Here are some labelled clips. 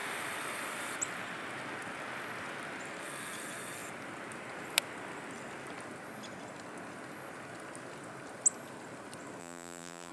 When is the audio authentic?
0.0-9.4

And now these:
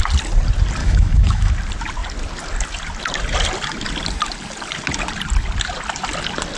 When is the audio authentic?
0.0-0.8; 1.5-6.6

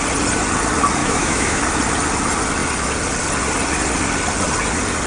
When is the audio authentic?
0.0-1.0; 1.6-5.1

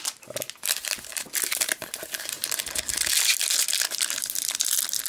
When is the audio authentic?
0.0-1.1; 2.6-5.1

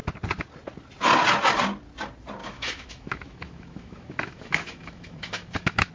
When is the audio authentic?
0.0-2.4

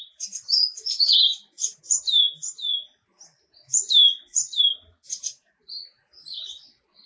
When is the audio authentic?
0.0-7.1